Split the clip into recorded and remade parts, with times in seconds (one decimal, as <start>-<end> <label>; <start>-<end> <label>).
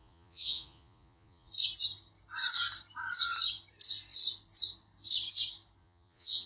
0.0-1.5 remade; 1.5-5.8 recorded; 5.8-6.5 remade